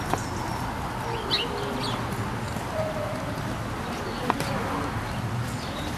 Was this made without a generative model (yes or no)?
yes